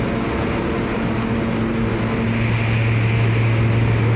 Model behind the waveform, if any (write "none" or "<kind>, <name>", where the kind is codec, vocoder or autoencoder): none